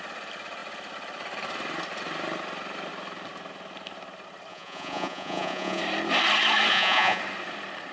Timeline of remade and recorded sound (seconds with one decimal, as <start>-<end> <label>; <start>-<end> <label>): 0.0-4.5 recorded; 4.5-5.8 remade; 5.8-6.7 recorded; 6.7-7.2 remade; 7.2-7.9 recorded